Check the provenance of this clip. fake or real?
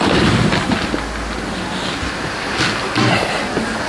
real